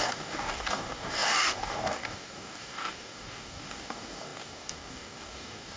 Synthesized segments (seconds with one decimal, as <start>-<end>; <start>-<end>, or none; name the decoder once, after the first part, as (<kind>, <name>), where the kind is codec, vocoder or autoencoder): 0.0-5.8 (codec, DAC)